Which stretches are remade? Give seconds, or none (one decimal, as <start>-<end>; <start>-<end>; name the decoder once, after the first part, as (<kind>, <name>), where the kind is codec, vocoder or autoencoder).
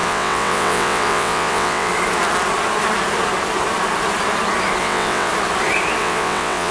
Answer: 0.0-1.9 (vocoder, WaveNeXt); 4.8-5.3; 6.0-6.7